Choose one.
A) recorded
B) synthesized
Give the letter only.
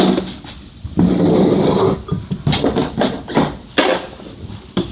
A